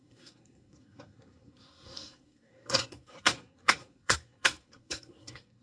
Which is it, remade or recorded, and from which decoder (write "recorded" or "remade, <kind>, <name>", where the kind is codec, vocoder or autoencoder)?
remade, codec, SNAC